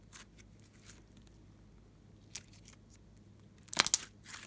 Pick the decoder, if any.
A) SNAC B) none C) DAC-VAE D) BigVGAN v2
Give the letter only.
B